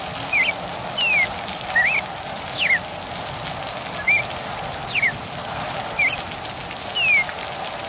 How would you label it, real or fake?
real